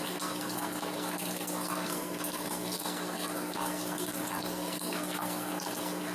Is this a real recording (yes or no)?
no